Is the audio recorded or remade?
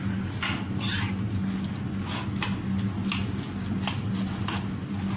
recorded